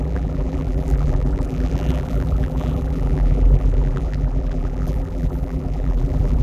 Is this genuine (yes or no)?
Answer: no